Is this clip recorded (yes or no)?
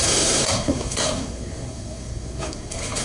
no